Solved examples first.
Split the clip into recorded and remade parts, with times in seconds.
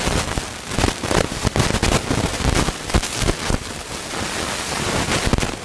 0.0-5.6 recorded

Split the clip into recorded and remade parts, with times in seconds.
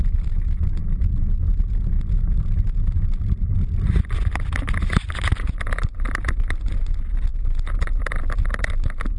0.0-9.2 recorded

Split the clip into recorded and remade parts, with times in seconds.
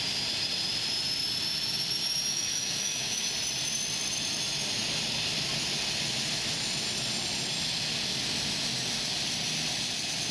0.0-2.3 recorded; 2.3-3.3 remade; 3.3-10.3 recorded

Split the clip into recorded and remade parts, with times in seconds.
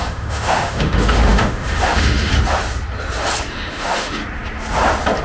0.0-2.3 remade; 2.3-3.5 recorded; 3.5-4.2 remade; 4.2-5.2 recorded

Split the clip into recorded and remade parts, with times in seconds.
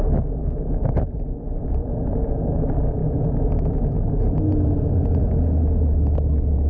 0.0-0.4 recorded; 0.4-1.4 remade; 1.4-3.0 recorded; 3.0-5.3 remade; 5.3-6.7 recorded